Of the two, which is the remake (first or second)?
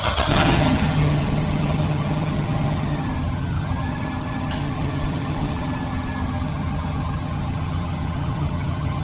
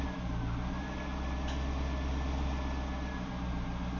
first